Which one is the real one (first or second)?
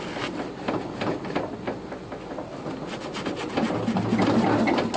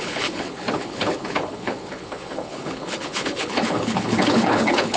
first